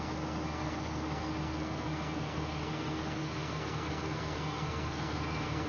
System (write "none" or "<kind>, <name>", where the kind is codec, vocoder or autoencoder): codec, SNAC